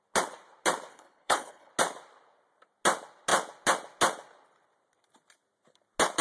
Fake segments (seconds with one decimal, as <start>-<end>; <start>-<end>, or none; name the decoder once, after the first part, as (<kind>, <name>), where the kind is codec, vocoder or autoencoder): 0.9-1.7 (codec, HILCodec)